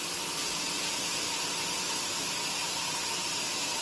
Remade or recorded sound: recorded